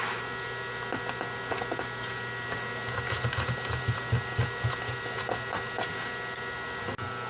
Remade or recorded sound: recorded